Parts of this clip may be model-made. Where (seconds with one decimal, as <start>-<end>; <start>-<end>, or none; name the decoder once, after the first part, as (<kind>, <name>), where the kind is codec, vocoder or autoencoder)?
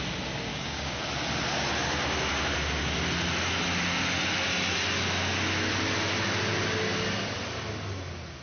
0.5-1.0 (codec, DAC)